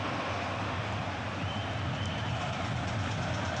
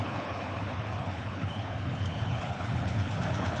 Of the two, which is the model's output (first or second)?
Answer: second